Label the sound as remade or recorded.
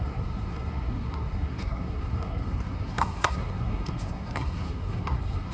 remade